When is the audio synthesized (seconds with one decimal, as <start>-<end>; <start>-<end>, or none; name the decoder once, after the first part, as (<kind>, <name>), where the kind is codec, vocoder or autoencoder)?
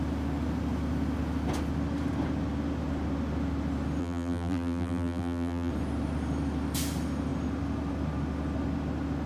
4.0-5.7 (vocoder, BigVGAN v2)